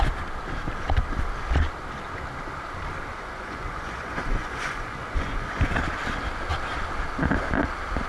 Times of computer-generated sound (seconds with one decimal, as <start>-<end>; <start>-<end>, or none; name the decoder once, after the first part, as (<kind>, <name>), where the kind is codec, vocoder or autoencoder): 3.1-5.7 (vocoder, Vocos)